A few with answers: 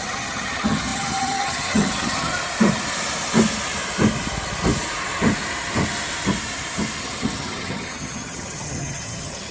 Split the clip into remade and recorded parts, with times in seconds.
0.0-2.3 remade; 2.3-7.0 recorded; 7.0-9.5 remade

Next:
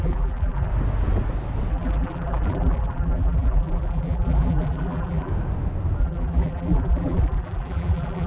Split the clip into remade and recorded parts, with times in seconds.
0.0-0.7 remade; 0.7-1.7 recorded; 1.7-5.3 remade; 5.3-6.0 recorded; 6.0-8.3 remade

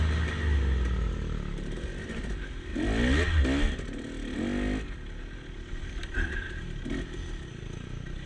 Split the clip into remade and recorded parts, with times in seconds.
0.0-8.3 recorded

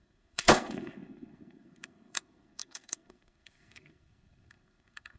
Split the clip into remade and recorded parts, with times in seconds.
0.0-5.2 remade